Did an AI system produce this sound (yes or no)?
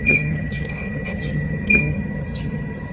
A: yes